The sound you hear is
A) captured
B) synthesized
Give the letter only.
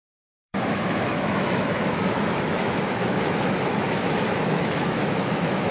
B